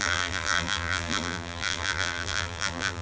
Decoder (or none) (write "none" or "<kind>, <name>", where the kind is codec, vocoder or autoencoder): vocoder, BigVGAN v2